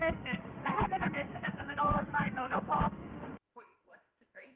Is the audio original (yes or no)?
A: no